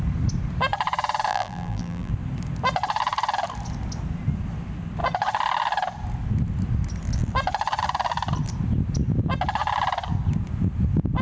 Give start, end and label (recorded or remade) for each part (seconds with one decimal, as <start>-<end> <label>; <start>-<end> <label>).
0.0-1.3 recorded; 1.3-2.1 remade; 2.1-11.2 recorded